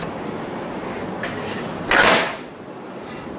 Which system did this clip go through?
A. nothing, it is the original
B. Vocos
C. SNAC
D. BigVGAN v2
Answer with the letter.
A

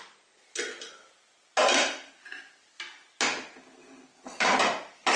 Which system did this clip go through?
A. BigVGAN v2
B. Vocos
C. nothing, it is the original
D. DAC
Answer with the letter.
C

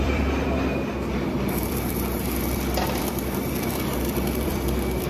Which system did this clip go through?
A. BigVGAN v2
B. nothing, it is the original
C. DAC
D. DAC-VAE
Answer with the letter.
A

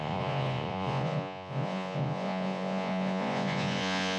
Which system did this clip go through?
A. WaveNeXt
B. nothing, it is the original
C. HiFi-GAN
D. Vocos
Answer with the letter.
D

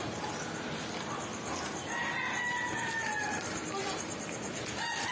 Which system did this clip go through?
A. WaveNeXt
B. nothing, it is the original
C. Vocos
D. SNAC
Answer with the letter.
B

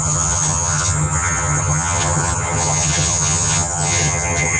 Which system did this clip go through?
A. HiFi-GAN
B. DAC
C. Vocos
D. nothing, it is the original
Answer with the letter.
A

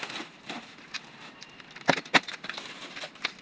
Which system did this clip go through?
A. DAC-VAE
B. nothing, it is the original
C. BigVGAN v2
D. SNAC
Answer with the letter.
B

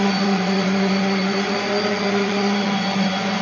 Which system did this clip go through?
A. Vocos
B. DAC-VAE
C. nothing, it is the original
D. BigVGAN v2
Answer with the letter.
A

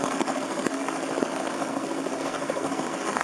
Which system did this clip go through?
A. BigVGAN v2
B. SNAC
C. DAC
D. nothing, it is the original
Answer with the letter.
B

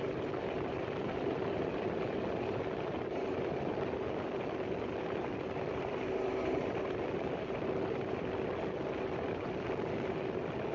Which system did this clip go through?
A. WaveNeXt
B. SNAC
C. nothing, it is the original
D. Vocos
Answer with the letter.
C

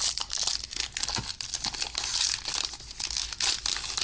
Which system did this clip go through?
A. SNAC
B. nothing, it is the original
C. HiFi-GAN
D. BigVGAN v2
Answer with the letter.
B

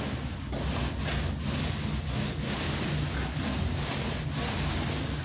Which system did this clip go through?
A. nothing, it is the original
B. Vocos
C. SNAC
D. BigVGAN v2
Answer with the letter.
A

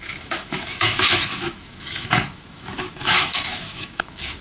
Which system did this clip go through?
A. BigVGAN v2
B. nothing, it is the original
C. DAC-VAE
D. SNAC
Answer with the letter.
C